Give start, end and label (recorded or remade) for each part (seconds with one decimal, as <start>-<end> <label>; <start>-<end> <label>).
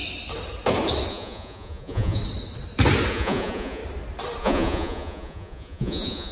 0.0-1.1 recorded; 1.1-2.2 remade; 2.2-3.1 recorded; 3.1-3.8 remade; 3.8-4.4 recorded; 4.4-6.3 remade